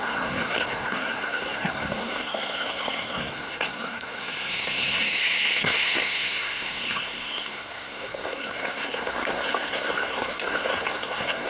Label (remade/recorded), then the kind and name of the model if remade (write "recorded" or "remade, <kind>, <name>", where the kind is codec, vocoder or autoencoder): remade, codec, SNAC